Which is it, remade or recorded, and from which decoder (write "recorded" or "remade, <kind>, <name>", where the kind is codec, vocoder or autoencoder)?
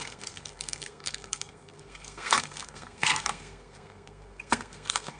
remade, codec, SNAC